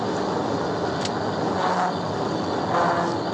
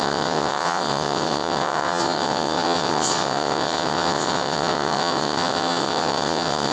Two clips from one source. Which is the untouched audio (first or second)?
first